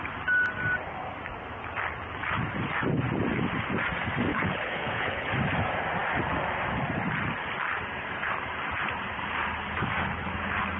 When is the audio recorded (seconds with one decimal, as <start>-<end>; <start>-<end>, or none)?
0.0-4.3; 5.3-10.8